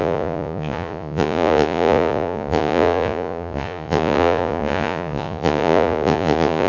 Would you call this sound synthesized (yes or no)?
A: yes